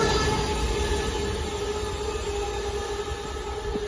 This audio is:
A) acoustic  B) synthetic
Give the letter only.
A